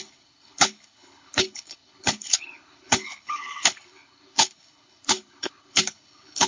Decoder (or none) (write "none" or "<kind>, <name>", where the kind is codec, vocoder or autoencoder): codec, HILCodec